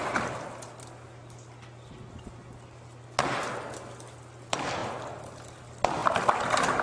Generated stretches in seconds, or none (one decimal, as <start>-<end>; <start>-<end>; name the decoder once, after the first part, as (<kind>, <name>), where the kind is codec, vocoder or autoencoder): none